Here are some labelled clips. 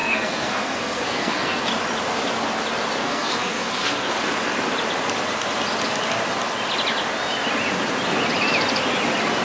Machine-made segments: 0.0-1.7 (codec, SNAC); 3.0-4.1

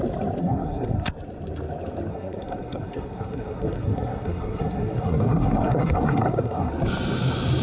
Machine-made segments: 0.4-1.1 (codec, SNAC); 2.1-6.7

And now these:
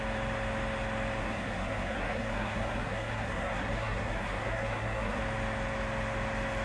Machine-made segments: 1.2-5.2 (codec, SNAC)

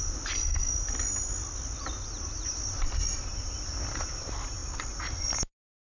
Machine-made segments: none